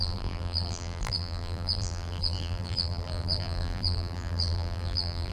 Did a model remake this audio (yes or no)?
yes